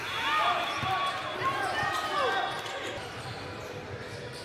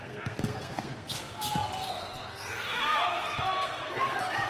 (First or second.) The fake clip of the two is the second